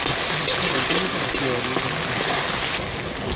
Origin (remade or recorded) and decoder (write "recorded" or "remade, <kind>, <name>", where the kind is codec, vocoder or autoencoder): recorded